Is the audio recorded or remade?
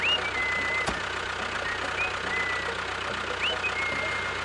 recorded